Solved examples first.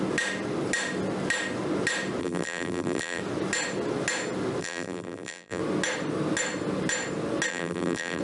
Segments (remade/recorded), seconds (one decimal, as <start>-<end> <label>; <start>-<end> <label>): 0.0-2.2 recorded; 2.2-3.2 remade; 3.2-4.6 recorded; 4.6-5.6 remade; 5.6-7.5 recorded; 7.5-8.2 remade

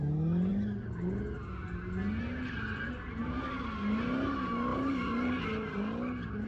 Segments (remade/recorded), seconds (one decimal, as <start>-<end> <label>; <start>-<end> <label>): 0.0-4.7 recorded; 4.7-5.4 remade; 5.4-6.5 recorded

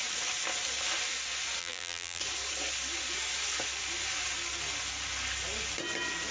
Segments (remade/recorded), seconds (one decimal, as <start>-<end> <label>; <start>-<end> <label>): 0.0-1.6 recorded; 1.6-2.2 remade; 2.2-6.3 recorded

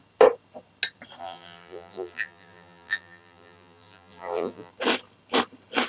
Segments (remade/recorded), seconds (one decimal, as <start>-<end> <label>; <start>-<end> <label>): 0.0-1.2 recorded; 1.2-4.7 remade; 4.7-5.9 recorded